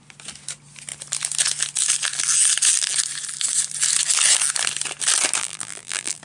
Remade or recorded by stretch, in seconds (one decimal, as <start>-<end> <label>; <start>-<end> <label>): 0.0-5.4 recorded; 5.4-6.2 remade